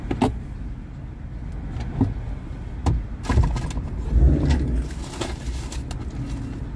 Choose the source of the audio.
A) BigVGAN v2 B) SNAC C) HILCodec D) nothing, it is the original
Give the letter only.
D